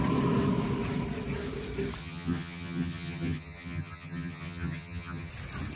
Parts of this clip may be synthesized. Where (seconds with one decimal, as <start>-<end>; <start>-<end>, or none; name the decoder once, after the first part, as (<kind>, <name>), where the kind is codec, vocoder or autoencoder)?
2.0-5.3 (vocoder, HiFi-GAN)